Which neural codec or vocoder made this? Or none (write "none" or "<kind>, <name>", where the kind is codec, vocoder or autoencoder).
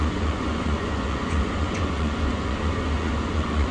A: vocoder, Vocos